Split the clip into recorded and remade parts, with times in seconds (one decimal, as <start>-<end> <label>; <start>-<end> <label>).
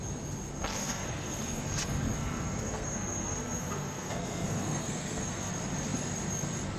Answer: 0.0-0.8 recorded; 0.8-1.4 remade; 1.4-2.2 recorded; 2.2-5.5 remade; 5.5-6.8 recorded